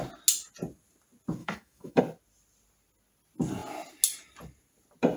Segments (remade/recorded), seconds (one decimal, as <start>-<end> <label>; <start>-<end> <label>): 0.0-1.4 recorded; 1.4-2.0 remade; 2.0-5.2 recorded